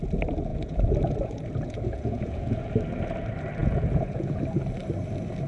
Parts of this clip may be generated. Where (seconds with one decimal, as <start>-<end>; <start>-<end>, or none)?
0.5-2.7; 3.6-4.4